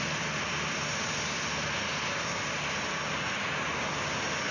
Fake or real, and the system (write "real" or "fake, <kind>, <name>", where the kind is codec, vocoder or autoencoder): real